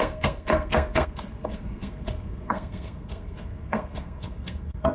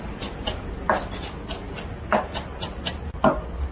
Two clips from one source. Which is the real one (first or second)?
second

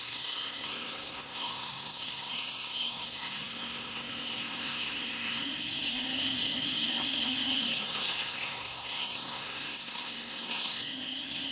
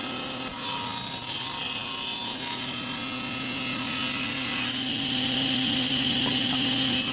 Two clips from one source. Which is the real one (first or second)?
second